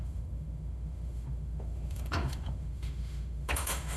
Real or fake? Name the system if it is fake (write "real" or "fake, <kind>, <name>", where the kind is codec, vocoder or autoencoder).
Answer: fake, autoencoder, DAC-VAE